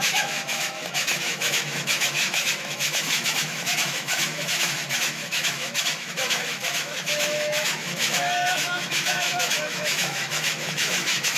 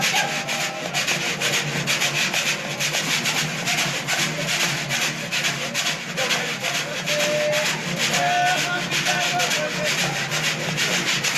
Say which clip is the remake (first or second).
first